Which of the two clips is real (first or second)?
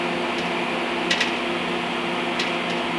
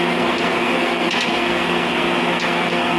first